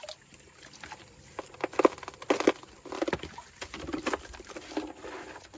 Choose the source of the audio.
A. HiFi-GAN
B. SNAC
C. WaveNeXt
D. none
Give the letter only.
D